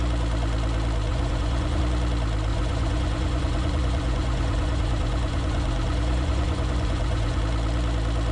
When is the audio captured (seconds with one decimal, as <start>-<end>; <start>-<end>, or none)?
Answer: 0.0-1.1; 1.8-2.5; 7.4-8.3